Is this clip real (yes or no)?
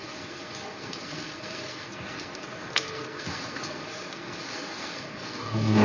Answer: no